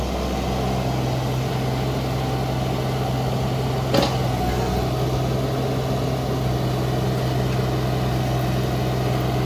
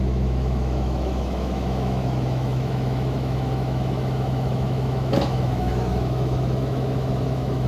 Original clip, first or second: first